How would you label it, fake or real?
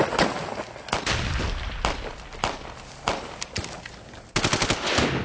real